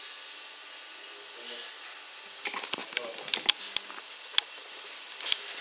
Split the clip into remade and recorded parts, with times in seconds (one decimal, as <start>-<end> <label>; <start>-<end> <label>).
0.0-5.6 recorded